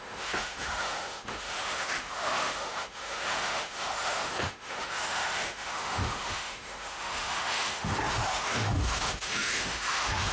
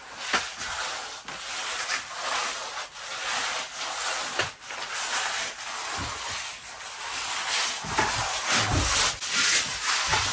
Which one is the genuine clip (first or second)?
second